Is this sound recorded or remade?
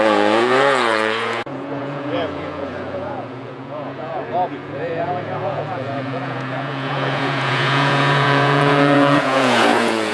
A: remade